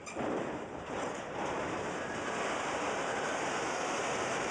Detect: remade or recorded remade